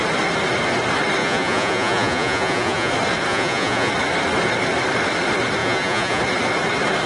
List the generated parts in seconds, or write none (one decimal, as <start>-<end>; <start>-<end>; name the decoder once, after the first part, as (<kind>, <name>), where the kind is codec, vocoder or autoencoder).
1.2-2.9 (vocoder, Vocos); 3.3-3.9; 5.6-6.2